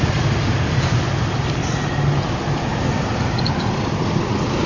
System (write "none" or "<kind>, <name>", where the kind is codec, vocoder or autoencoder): none